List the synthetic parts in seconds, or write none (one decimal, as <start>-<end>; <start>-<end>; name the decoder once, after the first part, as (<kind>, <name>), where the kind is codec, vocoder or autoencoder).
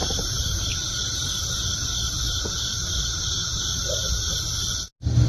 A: 0.0-0.6 (vocoder, BigVGAN v2); 3.4-4.3